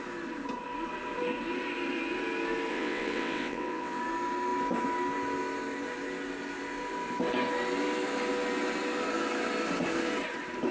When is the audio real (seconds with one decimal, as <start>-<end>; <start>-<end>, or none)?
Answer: 0.0-2.7; 4.0-10.7